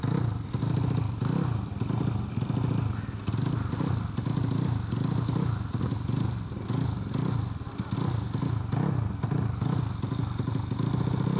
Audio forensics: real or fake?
real